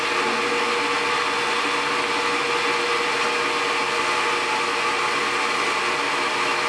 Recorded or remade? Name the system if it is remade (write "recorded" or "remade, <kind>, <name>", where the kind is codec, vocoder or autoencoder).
recorded